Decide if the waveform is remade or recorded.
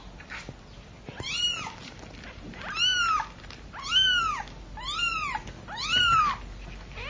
recorded